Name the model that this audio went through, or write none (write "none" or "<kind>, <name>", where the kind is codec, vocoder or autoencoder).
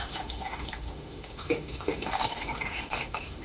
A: autoencoder, DAC-VAE